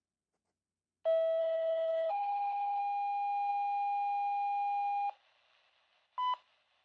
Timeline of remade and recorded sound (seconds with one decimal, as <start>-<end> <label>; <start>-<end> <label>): 0.0-1.4 recorded; 1.4-2.8 remade; 2.8-6.8 recorded